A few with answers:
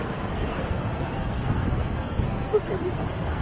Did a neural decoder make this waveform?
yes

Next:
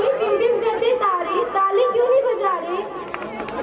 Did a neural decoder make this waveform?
no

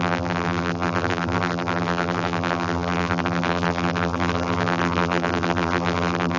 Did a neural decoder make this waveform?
yes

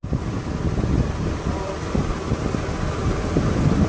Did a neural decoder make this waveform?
no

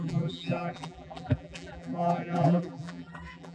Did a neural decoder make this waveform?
yes